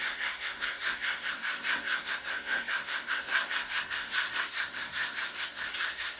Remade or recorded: remade